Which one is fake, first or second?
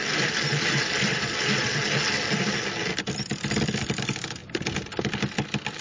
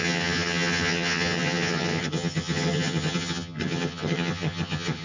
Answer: second